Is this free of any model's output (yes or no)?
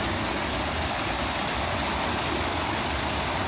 yes